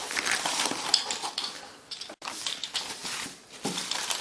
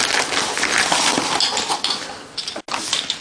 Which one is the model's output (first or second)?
first